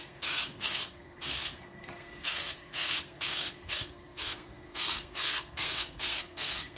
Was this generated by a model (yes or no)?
yes